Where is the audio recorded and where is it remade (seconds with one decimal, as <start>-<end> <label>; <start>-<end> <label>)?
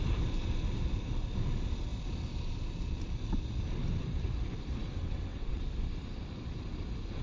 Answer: 0.0-4.8 recorded; 4.8-5.6 remade; 5.6-7.2 recorded